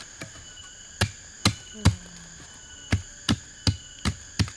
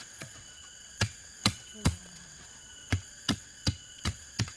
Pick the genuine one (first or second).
first